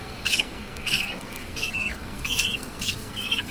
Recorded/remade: remade